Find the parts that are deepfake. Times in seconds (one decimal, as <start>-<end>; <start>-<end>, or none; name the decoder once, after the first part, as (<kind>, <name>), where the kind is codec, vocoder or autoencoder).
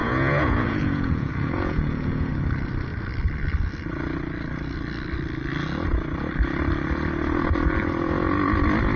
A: 0.0-2.3 (vocoder, Vocos)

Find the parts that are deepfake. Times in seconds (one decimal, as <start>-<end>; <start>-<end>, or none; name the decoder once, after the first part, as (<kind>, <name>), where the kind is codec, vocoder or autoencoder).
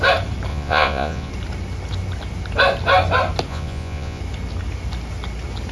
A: 0.5-1.3 (vocoder, Vocos); 3.5-4.2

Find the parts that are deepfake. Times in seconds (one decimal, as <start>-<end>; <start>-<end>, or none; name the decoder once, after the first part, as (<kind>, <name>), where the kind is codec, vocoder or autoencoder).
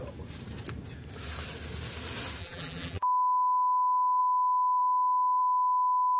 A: 2.4-4.2 (vocoder, BigVGAN v2)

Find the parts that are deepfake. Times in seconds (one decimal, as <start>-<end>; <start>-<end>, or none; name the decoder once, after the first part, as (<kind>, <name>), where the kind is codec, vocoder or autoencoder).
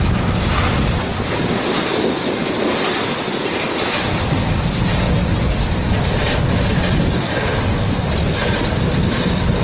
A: none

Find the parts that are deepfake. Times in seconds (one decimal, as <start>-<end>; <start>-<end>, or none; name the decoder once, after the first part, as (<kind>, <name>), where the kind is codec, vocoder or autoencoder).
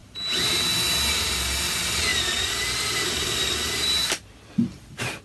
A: 0.0-0.5 (vocoder, BigVGAN v2); 2.1-5.2